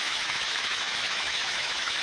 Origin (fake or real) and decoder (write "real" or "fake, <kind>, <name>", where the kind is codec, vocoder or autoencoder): fake, autoencoder, DAC-VAE